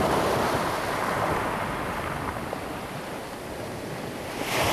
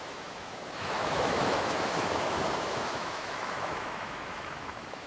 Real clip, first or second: first